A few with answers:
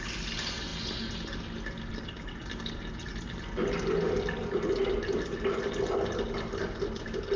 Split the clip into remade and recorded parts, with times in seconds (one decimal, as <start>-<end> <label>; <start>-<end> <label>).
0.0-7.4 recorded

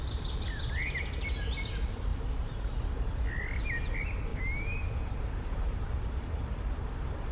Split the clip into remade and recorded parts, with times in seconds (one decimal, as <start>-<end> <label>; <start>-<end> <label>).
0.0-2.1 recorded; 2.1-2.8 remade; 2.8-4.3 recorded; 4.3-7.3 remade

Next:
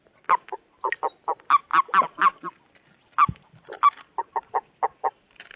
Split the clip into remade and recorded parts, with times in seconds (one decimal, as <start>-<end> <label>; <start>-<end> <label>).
0.0-5.6 recorded

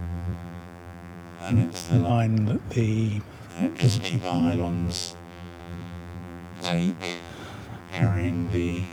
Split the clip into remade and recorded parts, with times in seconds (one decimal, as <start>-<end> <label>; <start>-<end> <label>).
0.0-2.1 remade; 2.1-3.5 recorded; 3.5-7.3 remade; 7.3-7.8 recorded; 7.8-8.9 remade

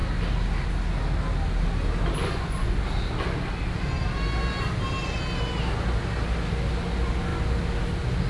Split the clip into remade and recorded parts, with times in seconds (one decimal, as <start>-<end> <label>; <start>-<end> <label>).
0.0-2.2 recorded; 2.2-2.8 remade; 2.8-8.3 recorded

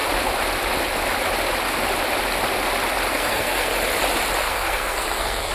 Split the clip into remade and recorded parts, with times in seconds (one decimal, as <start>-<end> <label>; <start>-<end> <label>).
0.0-3.1 recorded; 3.1-3.7 remade; 3.7-4.4 recorded; 4.4-5.5 remade

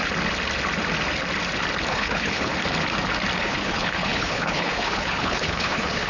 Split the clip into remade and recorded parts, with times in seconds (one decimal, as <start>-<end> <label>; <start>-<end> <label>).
0.0-1.9 recorded; 1.9-2.5 remade; 2.5-3.4 recorded; 3.4-6.1 remade

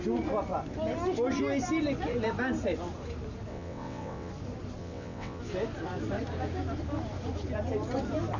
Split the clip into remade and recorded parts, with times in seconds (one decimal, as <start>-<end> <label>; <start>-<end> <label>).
0.0-3.5 recorded; 3.5-4.3 remade; 4.3-4.8 recorded; 4.8-5.4 remade; 5.4-8.4 recorded